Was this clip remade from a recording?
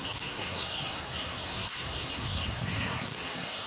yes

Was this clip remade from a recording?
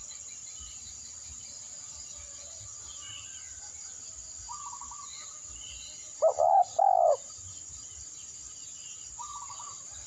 no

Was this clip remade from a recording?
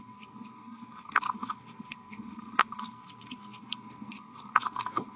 yes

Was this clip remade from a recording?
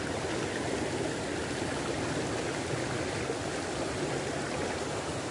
no